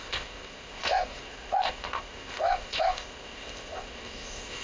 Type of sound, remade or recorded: remade